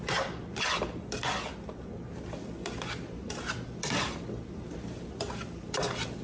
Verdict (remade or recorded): recorded